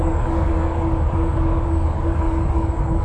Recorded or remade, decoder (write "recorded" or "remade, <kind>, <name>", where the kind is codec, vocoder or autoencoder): remade, codec, DAC